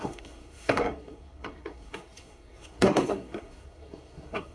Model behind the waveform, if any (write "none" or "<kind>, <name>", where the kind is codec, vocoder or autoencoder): codec, SNAC